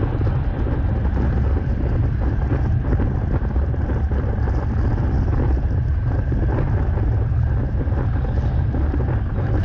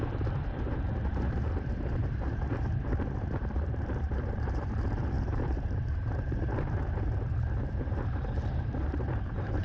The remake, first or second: second